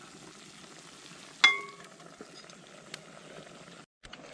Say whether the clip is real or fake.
real